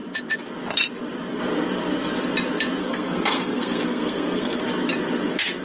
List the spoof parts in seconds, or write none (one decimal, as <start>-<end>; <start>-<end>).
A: 2.8-4.6